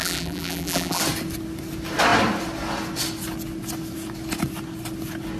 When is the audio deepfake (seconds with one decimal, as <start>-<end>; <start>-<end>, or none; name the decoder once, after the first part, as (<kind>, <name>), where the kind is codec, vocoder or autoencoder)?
0.0-1.0 (vocoder, BigVGAN v2)